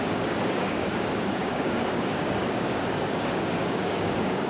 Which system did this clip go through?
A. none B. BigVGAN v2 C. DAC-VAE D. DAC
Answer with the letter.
D